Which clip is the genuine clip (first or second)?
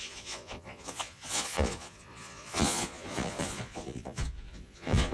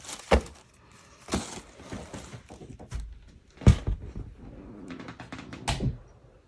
second